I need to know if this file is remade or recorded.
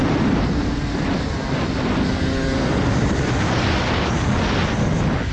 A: recorded